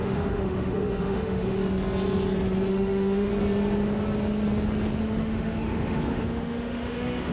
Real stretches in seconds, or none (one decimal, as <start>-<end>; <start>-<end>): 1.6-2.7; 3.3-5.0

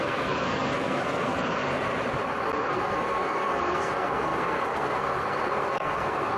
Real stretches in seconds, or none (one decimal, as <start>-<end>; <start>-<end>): 1.9-2.6

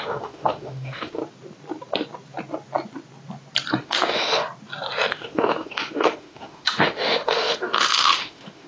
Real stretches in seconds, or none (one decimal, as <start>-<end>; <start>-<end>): 1.2-3.8; 4.4-5.1

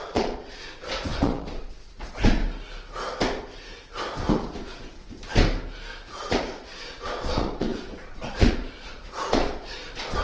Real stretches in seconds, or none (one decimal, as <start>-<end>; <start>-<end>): 2.4-4.3; 4.8-6.1

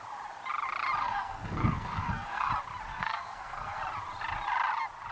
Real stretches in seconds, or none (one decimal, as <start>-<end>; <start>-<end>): 0.0-1.0; 2.5-2.9; 3.8-5.1

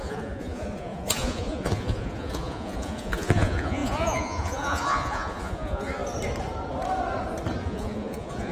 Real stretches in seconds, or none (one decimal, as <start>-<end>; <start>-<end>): 6.0-7.6